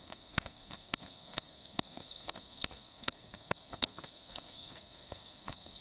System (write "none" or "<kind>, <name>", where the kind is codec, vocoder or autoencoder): codec, SNAC